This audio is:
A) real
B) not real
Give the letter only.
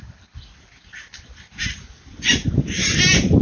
A